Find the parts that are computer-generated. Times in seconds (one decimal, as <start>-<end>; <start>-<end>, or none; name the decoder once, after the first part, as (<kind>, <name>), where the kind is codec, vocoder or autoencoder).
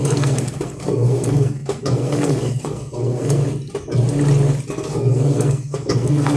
0.0-3.4 (codec, SNAC); 4.7-6.4